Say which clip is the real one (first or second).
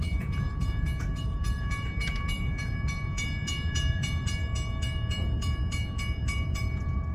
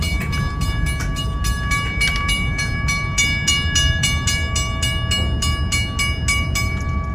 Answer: second